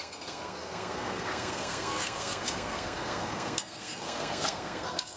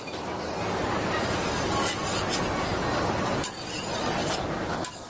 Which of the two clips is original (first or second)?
second